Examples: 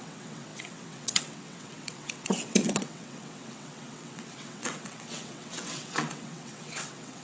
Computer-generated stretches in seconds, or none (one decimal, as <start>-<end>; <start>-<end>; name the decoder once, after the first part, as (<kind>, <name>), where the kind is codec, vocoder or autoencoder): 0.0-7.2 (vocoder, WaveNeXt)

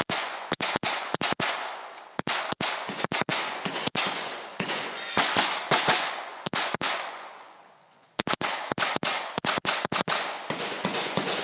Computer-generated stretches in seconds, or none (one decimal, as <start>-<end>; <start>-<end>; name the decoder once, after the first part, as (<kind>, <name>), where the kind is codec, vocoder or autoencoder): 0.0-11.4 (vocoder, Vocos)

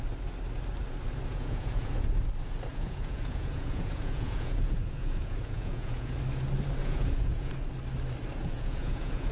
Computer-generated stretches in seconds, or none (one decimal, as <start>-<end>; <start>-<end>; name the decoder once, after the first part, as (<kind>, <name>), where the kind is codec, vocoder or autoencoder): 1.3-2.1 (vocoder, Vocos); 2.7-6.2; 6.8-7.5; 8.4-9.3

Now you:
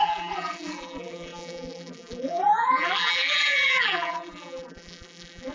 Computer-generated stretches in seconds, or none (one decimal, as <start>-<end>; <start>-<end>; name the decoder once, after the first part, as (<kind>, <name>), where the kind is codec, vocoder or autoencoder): 0.0-5.5 (vocoder, BigVGAN v2)